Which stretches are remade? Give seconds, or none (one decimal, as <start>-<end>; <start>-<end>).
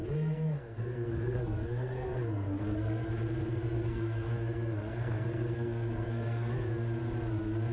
0.0-3.1; 3.5-6.5